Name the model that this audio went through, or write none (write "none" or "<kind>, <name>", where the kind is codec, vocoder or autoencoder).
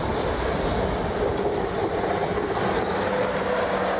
none